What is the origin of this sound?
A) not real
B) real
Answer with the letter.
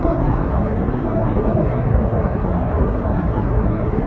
A